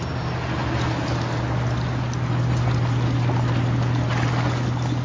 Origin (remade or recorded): recorded